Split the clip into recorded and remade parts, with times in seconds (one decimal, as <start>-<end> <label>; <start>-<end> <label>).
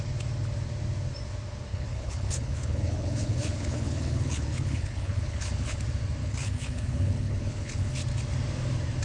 0.0-1.7 recorded; 1.7-5.8 remade; 5.8-6.2 recorded; 6.2-7.9 remade; 7.9-9.0 recorded